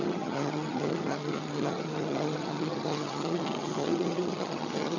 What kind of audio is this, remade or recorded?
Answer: remade